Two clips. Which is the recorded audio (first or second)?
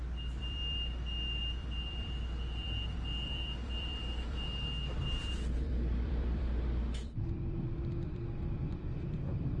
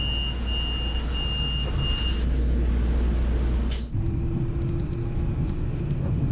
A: second